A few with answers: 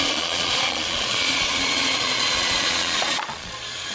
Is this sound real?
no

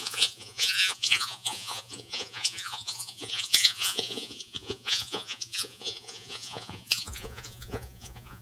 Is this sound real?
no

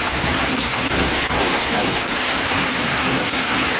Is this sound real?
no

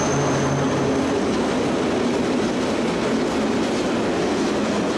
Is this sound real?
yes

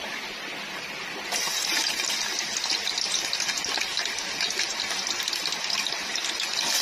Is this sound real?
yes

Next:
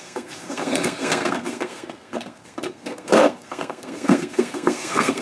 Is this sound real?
no